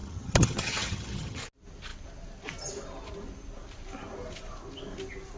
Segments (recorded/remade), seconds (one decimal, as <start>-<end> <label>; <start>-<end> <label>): 0.0-1.4 remade; 1.4-5.4 recorded